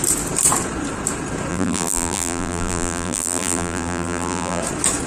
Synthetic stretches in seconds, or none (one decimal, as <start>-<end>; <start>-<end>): 1.5-4.6